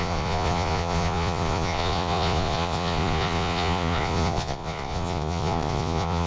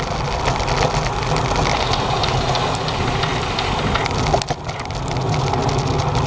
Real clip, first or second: second